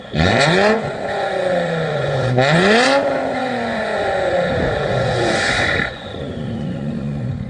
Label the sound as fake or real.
fake